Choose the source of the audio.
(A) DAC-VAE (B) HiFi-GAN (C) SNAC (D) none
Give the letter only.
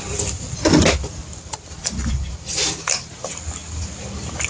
D